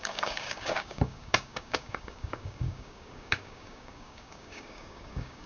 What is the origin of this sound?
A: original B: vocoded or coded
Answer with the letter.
B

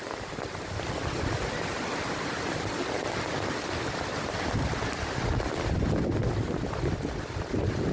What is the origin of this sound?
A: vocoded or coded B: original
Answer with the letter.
B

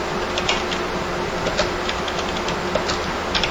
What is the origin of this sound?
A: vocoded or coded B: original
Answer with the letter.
B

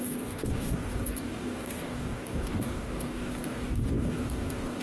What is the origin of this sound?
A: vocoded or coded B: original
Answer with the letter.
A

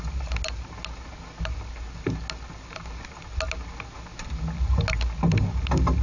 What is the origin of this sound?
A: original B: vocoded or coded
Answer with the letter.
A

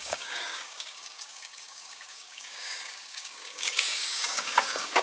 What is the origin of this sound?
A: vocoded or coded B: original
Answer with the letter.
A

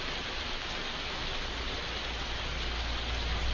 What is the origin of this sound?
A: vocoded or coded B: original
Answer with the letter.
B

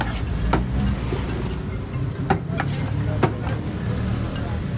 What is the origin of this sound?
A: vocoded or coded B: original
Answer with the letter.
B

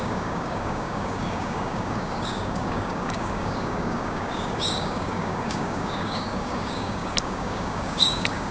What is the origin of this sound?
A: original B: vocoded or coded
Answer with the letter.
B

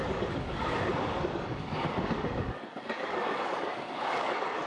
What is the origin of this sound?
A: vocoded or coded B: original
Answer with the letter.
A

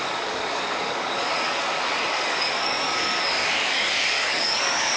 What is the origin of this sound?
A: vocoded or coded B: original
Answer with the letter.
A